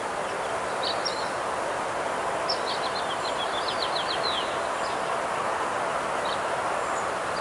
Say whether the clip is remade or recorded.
recorded